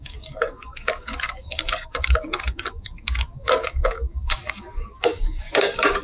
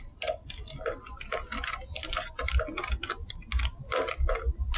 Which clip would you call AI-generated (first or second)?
first